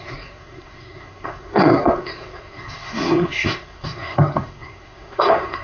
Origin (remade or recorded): remade